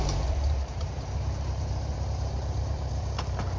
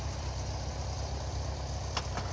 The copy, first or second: first